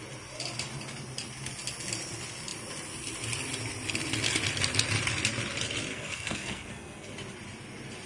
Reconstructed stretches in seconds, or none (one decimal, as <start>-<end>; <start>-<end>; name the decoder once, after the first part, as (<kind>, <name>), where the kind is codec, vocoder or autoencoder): 5.9-7.1 (codec, SNAC)